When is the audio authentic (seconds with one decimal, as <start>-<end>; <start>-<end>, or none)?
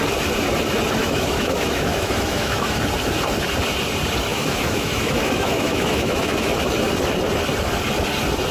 0.0-1.0; 2.8-4.3; 6.7-8.5